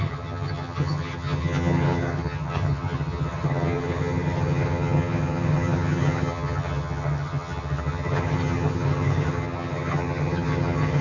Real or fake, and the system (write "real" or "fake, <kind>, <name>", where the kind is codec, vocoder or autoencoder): fake, vocoder, HiFi-GAN